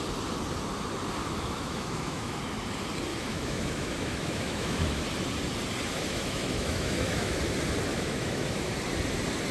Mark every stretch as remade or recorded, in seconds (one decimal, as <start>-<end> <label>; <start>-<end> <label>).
0.0-1.2 recorded; 1.2-2.4 remade; 2.4-3.1 recorded; 3.1-5.0 remade; 5.0-5.9 recorded; 5.9-7.4 remade; 7.4-7.9 recorded; 7.9-8.7 remade; 8.7-9.5 recorded